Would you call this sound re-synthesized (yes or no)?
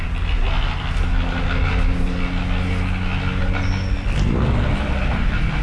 no